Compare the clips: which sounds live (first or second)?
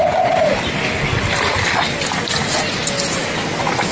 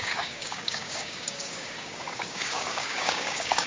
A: first